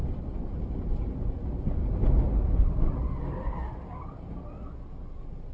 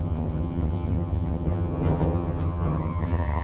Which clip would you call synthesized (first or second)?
second